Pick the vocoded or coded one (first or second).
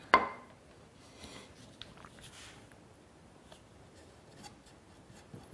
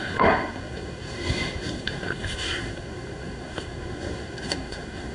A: second